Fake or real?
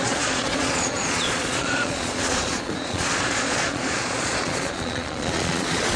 fake